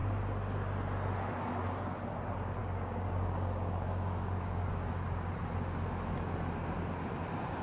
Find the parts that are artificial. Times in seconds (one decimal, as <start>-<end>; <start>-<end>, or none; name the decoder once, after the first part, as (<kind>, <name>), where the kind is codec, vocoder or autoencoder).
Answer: 2.6-4.9 (codec, DAC)